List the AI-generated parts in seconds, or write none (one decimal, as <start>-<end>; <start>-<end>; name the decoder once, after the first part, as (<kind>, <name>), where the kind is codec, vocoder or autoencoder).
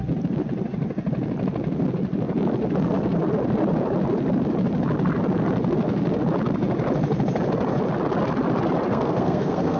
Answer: 8.9-9.8 (codec, SNAC)